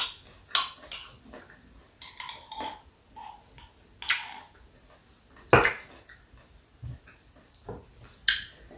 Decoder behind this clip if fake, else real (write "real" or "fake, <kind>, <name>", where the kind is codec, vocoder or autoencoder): real